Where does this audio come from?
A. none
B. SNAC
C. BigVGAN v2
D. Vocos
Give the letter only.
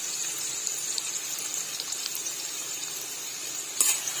C